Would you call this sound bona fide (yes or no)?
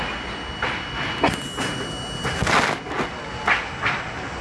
yes